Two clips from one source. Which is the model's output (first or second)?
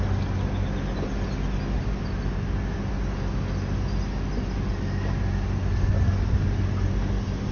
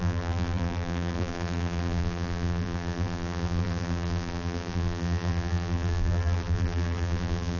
second